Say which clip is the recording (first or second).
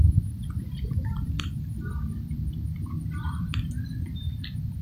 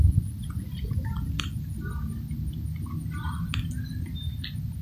second